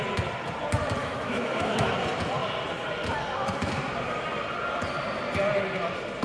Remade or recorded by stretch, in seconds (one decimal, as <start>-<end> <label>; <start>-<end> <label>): 0.0-1.0 recorded; 1.0-1.9 remade; 1.9-6.2 recorded